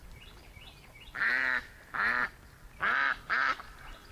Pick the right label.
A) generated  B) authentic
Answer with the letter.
B